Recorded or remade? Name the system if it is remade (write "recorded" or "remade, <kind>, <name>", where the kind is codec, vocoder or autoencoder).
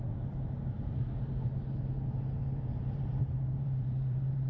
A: remade, vocoder, BigVGAN v2